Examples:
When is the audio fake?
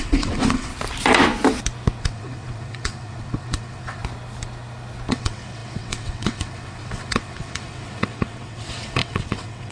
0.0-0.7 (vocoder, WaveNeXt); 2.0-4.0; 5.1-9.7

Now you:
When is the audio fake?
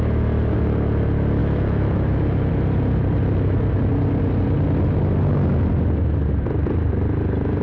1.4-2.5 (autoencoder, DAC-VAE)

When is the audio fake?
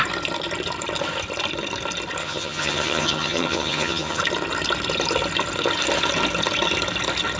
2.2-4.2 (vocoder, HiFi-GAN)